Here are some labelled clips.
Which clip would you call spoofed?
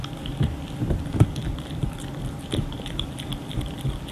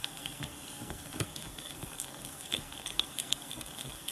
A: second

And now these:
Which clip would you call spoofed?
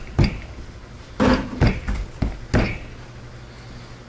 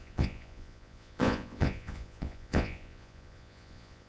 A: second